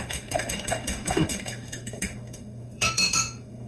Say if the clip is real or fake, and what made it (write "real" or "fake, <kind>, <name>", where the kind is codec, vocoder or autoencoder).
fake, autoencoder, DAC-VAE